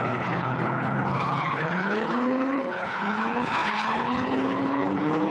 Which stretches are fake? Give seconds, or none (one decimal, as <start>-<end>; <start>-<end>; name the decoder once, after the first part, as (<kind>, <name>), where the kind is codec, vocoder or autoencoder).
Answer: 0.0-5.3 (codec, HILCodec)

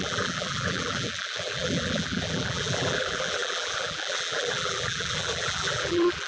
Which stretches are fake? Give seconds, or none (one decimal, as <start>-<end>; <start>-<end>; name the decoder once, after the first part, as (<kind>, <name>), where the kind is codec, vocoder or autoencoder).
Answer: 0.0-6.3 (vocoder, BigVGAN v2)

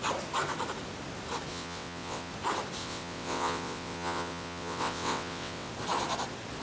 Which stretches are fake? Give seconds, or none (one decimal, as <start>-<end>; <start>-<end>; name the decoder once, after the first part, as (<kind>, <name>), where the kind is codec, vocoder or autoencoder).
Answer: 1.5-2.3 (vocoder, WaveNeXt); 2.8-5.7

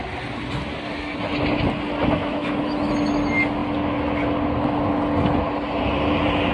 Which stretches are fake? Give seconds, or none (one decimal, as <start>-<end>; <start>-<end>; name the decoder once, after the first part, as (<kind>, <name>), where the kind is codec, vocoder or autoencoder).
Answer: 2.2-2.9 (autoencoder, DAC-VAE)

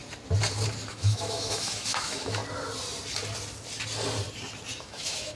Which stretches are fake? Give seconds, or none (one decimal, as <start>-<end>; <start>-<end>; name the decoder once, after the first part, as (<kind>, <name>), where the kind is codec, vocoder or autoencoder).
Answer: 0.9-2.4 (autoencoder, DAC-VAE); 4.8-5.4

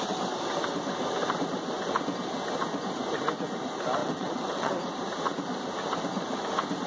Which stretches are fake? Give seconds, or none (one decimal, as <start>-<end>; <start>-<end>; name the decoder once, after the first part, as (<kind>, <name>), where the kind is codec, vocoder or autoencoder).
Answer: 4.0-4.7 (vocoder, WaveNeXt)

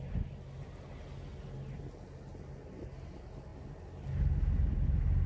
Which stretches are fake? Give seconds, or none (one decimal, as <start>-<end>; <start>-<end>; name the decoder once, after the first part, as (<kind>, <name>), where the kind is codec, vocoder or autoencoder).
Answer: none

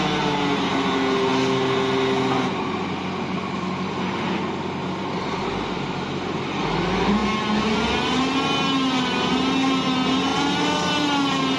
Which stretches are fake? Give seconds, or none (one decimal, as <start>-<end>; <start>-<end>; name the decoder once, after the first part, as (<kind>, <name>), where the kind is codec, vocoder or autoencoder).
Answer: none